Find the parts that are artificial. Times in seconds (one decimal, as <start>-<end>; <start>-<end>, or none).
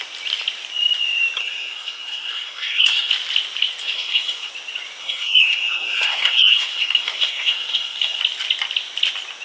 1.4-3.1; 3.8-4.5; 5.0-8.2